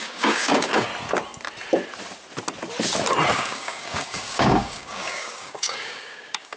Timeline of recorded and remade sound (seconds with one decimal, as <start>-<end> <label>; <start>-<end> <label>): 0.0-0.9 remade; 0.9-3.3 recorded; 3.3-6.6 remade

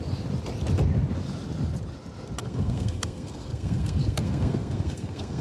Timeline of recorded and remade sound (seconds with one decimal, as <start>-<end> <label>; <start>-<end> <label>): 0.0-2.4 recorded; 2.4-5.4 remade